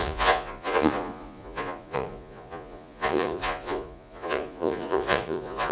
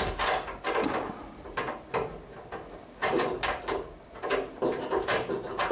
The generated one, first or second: first